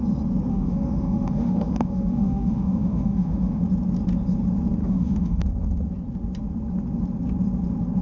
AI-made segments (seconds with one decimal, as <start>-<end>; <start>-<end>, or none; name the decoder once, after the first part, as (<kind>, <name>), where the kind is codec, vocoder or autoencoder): 0.5-3.6 (autoencoder, DAC-VAE); 4.8-5.4